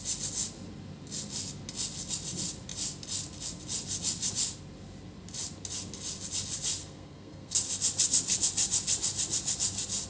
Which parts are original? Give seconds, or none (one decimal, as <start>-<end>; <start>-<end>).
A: 0.0-6.8; 7.5-10.1